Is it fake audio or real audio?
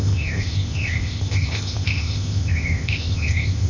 fake